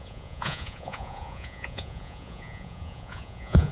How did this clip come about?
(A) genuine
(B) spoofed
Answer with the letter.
B